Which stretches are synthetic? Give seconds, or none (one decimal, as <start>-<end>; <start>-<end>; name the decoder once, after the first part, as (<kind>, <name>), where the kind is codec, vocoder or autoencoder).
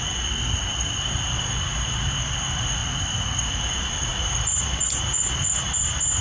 none